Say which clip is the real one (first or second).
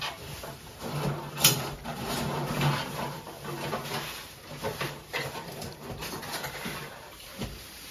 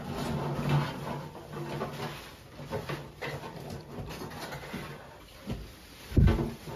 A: second